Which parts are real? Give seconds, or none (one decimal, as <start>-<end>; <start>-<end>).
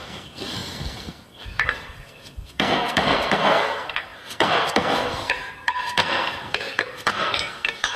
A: none